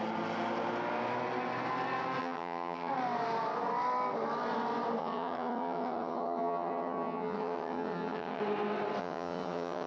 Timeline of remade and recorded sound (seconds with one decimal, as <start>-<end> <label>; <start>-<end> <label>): 0.0-2.2 recorded; 2.2-2.9 remade; 2.9-5.0 recorded; 5.0-8.4 remade; 8.4-9.0 recorded; 9.0-9.9 remade